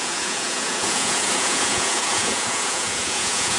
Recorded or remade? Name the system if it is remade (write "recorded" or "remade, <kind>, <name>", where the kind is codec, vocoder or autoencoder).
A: remade, vocoder, Vocos